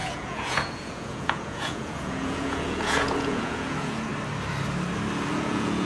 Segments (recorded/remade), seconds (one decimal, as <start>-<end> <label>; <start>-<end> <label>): 0.0-4.1 remade; 4.1-5.3 recorded; 5.3-5.9 remade